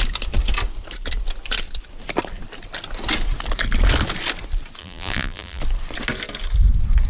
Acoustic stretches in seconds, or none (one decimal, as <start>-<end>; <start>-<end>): 0.0-4.8; 5.6-7.1